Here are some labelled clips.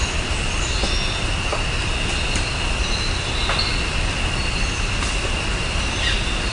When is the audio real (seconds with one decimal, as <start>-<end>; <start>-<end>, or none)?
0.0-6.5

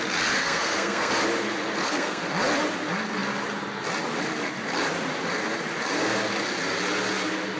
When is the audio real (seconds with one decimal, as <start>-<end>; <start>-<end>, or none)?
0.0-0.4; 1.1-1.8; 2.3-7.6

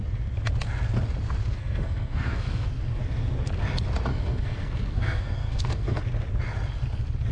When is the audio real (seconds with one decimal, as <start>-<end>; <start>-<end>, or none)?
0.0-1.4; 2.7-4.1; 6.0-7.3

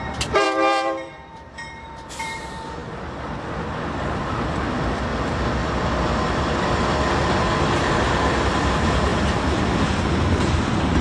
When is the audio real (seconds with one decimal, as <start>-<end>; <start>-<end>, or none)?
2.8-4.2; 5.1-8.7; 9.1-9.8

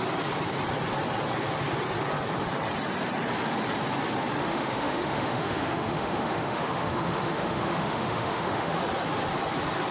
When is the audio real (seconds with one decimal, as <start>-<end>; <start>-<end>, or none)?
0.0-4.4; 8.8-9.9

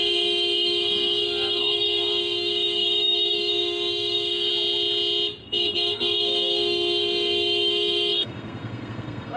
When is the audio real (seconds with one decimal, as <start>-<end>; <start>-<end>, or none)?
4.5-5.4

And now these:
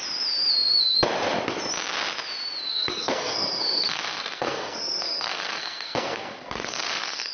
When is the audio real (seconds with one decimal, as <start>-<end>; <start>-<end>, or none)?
0.0-2.7